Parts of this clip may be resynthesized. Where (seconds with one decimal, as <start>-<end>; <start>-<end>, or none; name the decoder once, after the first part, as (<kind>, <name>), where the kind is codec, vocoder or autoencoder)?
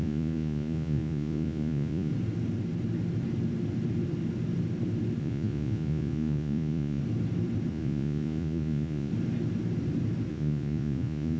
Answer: 0.0-2.1 (vocoder, Vocos); 5.2-7.0; 7.7-9.1; 10.3-11.4